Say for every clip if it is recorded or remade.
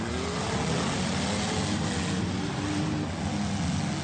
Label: recorded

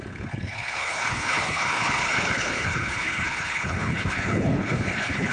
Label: remade